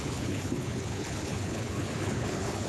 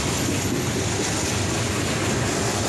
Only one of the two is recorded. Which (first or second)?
second